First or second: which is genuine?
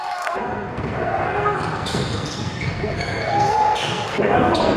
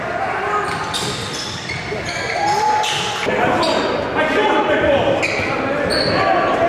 second